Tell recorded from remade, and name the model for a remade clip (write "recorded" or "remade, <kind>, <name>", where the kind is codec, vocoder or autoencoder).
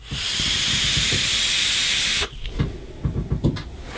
recorded